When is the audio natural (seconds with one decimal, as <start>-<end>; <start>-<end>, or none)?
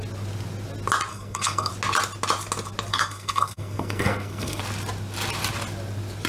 0.0-1.1; 1.7-2.9; 4.6-6.3